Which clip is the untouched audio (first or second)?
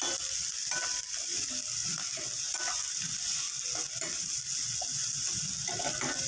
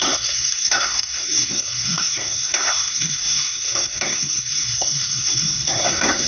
first